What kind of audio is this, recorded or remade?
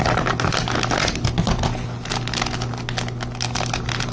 recorded